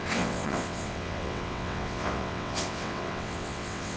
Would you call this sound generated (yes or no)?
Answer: yes